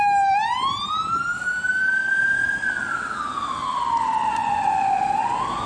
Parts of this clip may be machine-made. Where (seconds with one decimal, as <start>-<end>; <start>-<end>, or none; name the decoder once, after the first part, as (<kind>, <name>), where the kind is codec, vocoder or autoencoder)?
4.4-5.0 (vocoder, Vocos)